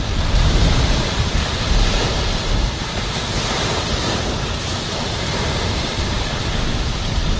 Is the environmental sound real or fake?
fake